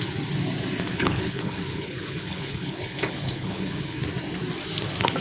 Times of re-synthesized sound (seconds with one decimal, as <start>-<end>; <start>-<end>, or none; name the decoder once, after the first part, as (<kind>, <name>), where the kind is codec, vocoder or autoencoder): 0.9-4.0 (codec, HILCodec)